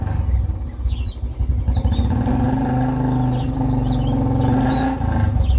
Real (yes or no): yes